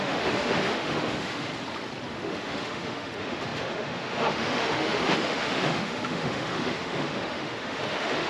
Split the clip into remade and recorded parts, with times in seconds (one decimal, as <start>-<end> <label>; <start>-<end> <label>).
0.0-1.5 remade; 1.5-2.1 recorded; 2.1-8.3 remade